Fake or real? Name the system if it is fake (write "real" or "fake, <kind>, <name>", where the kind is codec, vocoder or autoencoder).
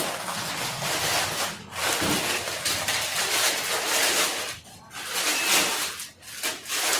real